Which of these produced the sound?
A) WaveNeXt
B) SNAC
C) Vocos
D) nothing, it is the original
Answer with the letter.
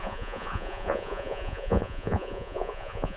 C